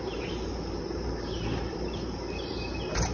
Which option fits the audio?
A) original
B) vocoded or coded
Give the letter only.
B